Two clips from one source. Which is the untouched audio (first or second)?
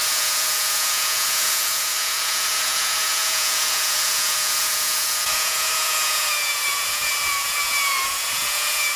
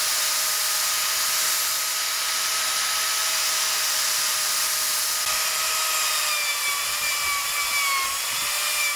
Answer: second